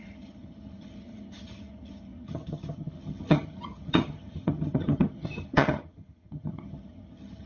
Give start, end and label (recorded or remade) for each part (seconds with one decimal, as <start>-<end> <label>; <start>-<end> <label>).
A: 0.0-7.5 remade